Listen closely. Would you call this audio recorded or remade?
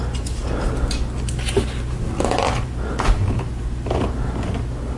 recorded